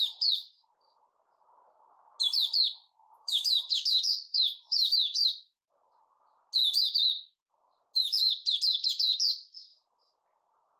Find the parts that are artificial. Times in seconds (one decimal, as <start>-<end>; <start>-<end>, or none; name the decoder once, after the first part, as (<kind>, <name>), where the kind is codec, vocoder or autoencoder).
2.8-5.7 (autoencoder, DAC-VAE)